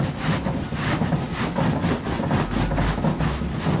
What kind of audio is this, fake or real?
real